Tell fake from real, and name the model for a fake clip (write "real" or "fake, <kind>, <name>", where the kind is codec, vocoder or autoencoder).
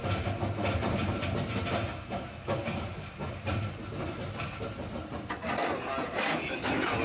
real